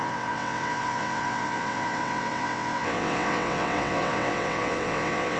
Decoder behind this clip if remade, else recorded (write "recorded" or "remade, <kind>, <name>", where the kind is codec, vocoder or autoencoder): remade, vocoder, WaveNeXt